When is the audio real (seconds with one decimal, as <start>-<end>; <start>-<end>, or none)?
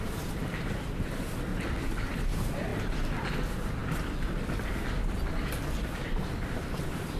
1.5-2.1; 2.7-3.3; 3.8-5.9